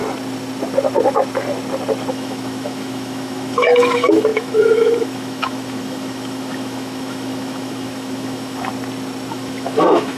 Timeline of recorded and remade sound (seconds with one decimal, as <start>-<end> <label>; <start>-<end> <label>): 0.0-2.1 recorded; 2.1-8.7 remade; 8.7-9.3 recorded; 9.3-10.2 remade

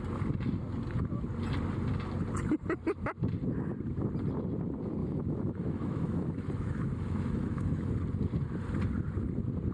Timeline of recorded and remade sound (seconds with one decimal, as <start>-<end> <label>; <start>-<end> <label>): 0.0-5.0 recorded; 5.0-7.9 remade; 7.9-9.7 recorded